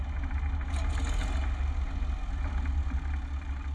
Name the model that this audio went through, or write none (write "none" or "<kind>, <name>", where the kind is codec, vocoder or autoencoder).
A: none